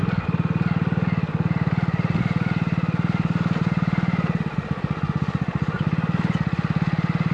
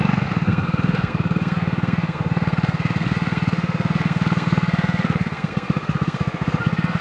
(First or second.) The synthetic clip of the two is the second